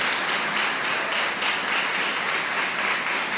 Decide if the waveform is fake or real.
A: real